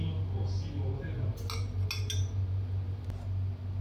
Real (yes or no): yes